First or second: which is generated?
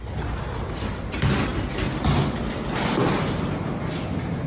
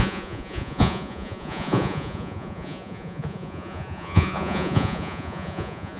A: second